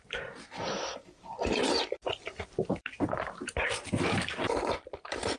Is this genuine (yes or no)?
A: no